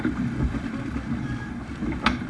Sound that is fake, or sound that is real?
real